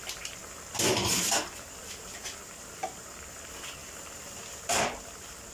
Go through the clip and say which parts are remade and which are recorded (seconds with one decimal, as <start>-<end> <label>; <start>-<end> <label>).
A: 0.0-3.8 recorded; 3.8-4.8 remade; 4.8-5.5 recorded